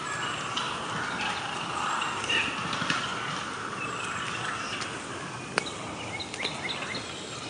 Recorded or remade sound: recorded